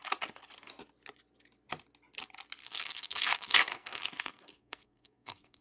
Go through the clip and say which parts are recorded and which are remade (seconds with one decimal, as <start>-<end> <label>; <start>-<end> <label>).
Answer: 0.0-2.6 recorded; 2.6-5.6 remade